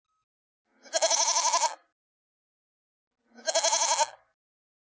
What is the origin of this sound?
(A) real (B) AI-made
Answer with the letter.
A